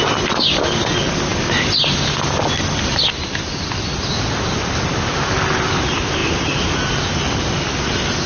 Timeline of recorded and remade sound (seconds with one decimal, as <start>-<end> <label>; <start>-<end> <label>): 0.0-8.3 recorded